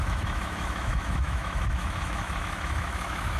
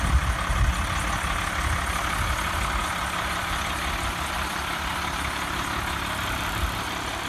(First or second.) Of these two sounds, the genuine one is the second